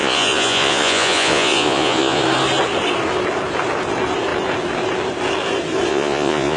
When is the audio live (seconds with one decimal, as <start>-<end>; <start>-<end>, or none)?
2.2-5.9